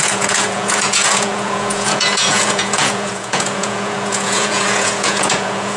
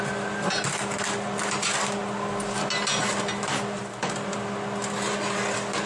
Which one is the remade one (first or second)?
first